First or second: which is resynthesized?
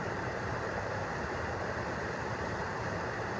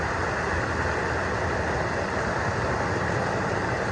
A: first